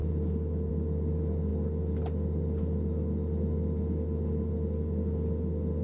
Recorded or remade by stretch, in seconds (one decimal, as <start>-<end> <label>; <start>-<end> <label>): 0.0-5.8 recorded